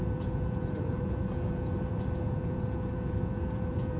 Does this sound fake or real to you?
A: fake